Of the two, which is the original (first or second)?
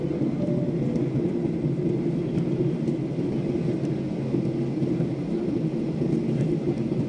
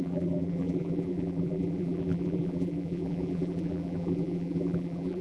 first